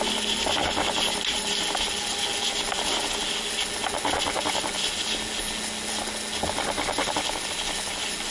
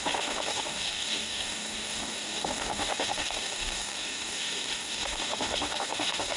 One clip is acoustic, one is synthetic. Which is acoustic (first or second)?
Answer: first